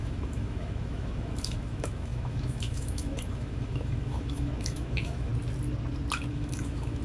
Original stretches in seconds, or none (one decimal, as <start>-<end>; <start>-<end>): 5.3-6.3